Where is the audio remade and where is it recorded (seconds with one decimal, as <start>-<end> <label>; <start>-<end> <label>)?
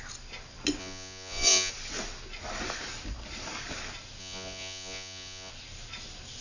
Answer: 0.0-0.8 recorded; 0.8-1.7 remade; 1.7-4.2 recorded; 4.2-5.5 remade; 5.5-6.4 recorded